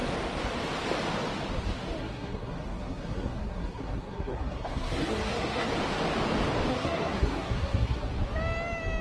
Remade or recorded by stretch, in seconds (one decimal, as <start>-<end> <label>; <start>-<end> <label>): 0.0-2.0 recorded; 2.0-5.7 remade; 5.7-6.7 recorded; 6.7-8.1 remade; 8.1-9.0 recorded